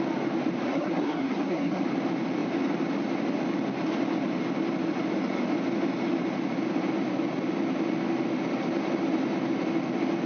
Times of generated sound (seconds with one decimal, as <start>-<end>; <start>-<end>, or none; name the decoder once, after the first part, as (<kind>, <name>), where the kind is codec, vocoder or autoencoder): 0.7-1.8 (codec, SNAC)